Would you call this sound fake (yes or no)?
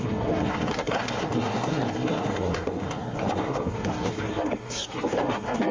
yes